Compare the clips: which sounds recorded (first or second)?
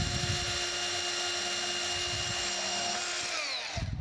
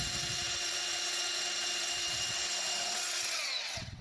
first